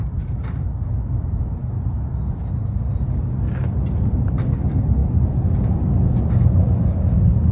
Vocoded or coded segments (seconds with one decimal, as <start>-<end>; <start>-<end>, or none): none